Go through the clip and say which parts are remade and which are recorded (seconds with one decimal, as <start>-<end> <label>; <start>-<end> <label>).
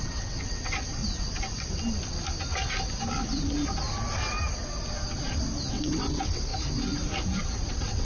0.0-1.0 remade; 1.0-5.7 recorded; 5.7-6.5 remade; 6.5-7.4 recorded; 7.4-8.0 remade